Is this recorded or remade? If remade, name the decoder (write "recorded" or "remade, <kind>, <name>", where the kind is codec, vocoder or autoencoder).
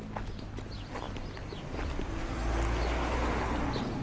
recorded